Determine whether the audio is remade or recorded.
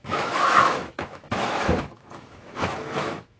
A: remade